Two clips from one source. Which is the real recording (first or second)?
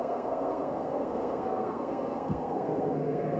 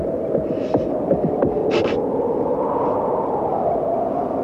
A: second